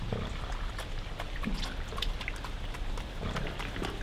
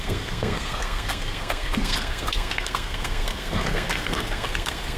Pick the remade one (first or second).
second